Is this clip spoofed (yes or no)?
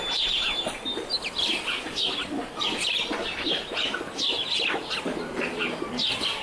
no